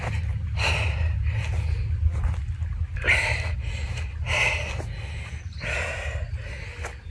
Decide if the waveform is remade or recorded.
recorded